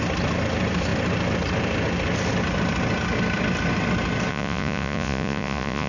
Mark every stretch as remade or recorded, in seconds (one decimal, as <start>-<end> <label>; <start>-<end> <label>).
0.0-4.3 recorded; 4.3-5.9 remade